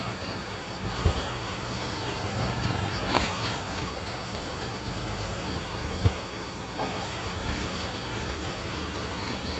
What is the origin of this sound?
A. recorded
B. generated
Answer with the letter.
B